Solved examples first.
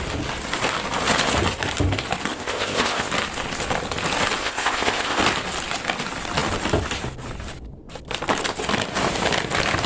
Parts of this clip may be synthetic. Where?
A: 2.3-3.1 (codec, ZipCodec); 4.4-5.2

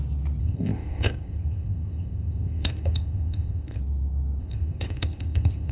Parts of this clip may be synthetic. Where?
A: 0.4-3.8 (codec, ZipCodec); 4.4-5.7

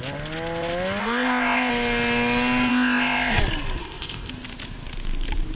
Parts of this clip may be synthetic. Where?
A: 1.0-1.7 (codec, ZipCodec); 2.7-3.4; 3.8-4.3

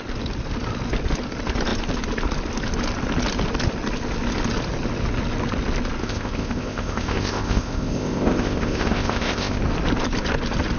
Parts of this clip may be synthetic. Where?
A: 6.0-9.6 (codec, ZipCodec)

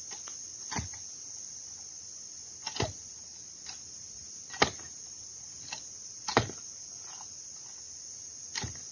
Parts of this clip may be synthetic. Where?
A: none

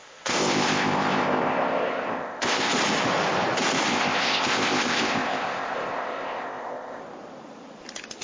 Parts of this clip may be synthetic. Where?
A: 0.0-2.7 (codec, ZipCodec); 3.9-7.0

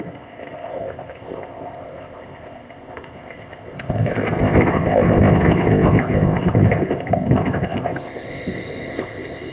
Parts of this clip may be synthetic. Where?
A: 0.0-9.5 (codec, ZipCodec)